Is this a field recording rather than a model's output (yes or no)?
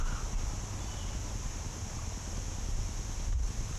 yes